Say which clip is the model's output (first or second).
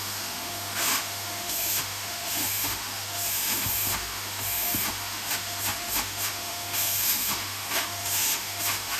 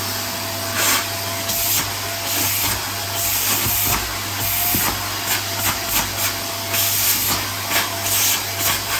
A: first